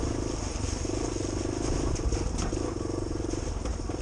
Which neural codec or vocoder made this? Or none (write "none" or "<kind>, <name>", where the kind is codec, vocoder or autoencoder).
none